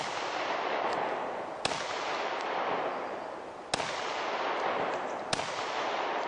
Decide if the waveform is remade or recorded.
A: recorded